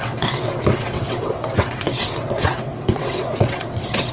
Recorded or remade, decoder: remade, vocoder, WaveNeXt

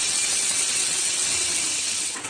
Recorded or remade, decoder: remade, vocoder, WaveNeXt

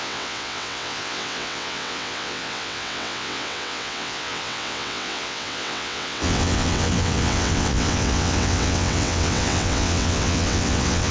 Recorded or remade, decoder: remade, vocoder, WaveNeXt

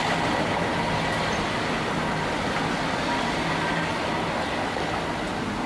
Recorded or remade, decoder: recorded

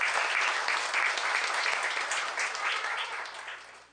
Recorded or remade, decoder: recorded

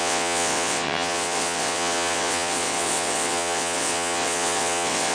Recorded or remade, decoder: remade, vocoder, WaveNeXt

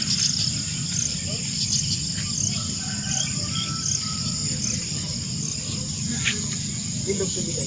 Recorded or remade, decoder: recorded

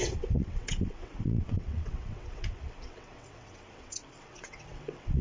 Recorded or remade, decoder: remade, vocoder, WaveNeXt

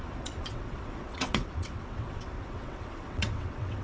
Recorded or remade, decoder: remade, vocoder, WaveNeXt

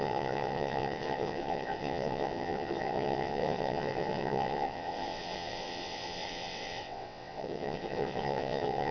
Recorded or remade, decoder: remade, vocoder, WaveNeXt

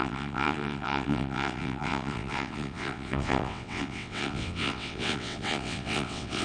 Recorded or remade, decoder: remade, vocoder, WaveNeXt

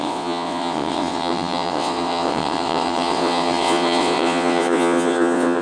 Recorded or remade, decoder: remade, vocoder, WaveNeXt